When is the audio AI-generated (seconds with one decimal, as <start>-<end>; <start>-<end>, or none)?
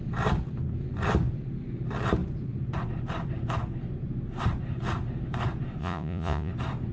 5.8-6.5